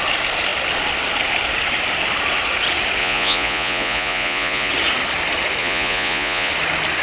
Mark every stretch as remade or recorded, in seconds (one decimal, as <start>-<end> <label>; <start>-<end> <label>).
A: 0.0-3.0 recorded; 3.0-4.7 remade; 4.7-5.6 recorded; 5.6-6.5 remade; 6.5-7.0 recorded